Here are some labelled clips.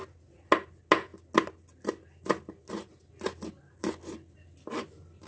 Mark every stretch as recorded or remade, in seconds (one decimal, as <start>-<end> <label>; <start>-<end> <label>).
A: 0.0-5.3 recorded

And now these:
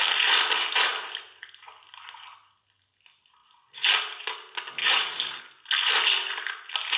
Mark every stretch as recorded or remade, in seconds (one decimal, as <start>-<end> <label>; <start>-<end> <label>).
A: 0.0-4.8 recorded; 4.8-5.4 remade; 5.4-7.0 recorded

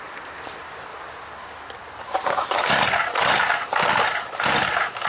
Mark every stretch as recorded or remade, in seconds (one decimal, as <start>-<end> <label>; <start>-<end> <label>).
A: 0.0-5.1 recorded